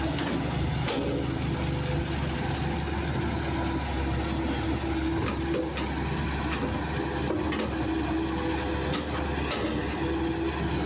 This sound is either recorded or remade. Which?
recorded